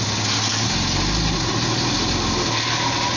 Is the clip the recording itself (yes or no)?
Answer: yes